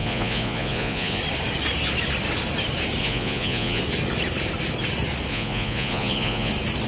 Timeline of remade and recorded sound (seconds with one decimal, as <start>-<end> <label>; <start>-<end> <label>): 0.0-1.2 remade; 1.2-3.0 recorded; 3.0-3.8 remade; 3.8-5.3 recorded; 5.3-6.5 remade; 6.5-6.9 recorded